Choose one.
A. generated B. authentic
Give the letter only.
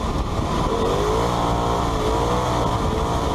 B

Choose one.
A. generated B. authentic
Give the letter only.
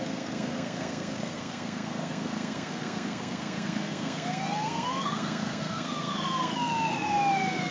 A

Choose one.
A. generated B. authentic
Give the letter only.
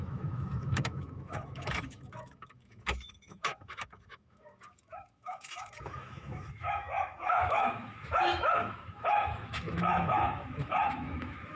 A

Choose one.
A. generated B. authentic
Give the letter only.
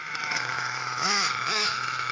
A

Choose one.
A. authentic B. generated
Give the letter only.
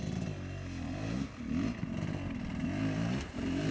A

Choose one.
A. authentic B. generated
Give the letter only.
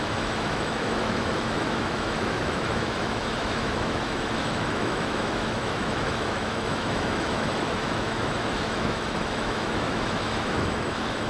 B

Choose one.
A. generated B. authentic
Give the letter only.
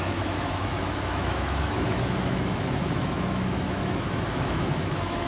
A